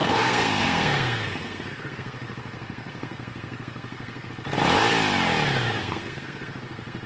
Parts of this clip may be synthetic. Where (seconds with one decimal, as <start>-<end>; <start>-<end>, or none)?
0.0-4.3; 5.8-7.1